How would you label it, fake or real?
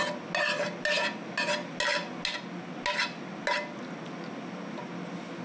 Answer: real